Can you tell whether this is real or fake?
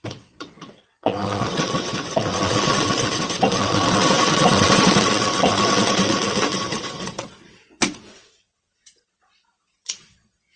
fake